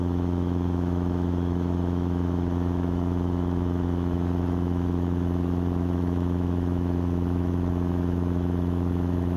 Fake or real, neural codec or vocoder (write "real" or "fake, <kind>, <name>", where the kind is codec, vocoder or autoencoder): fake, autoencoder, DAC-VAE